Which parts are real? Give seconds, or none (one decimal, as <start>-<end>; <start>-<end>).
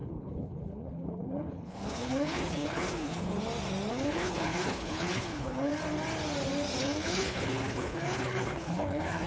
3.3-3.9; 5.7-6.8